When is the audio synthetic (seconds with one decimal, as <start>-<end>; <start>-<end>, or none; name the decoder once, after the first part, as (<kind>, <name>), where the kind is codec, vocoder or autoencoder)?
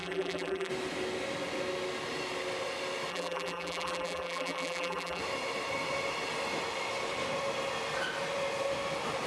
0.0-0.7 (vocoder, BigVGAN v2); 3.1-5.2